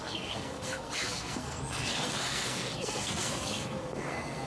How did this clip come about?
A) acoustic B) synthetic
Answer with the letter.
B